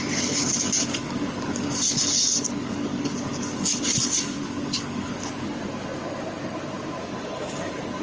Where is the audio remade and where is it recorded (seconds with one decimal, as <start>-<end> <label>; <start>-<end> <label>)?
0.0-0.8 recorded; 0.8-5.6 remade; 5.6-7.0 recorded; 7.0-8.0 remade